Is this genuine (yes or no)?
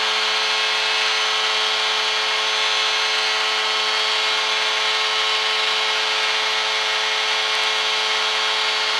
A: yes